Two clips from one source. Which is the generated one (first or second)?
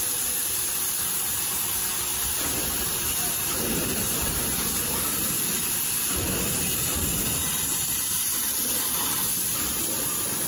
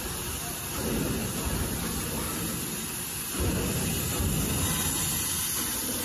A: first